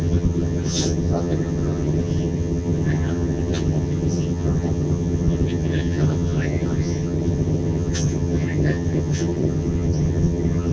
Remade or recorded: remade